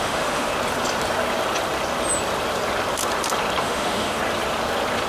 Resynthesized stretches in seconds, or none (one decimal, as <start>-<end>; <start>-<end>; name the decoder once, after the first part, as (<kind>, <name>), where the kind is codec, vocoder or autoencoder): 0.0-0.5 (autoencoder, DAC-VAE); 3.6-4.2